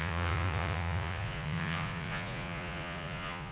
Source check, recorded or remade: remade